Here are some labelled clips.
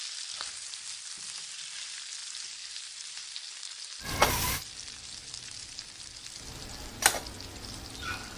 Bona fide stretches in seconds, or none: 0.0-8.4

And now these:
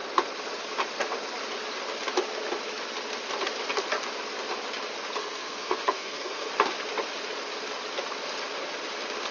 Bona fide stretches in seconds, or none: 0.0-5.2; 6.5-9.3

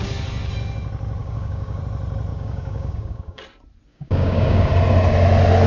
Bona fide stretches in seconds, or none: 0.0-1.2; 1.8-2.3; 3.4-3.9; 4.7-5.7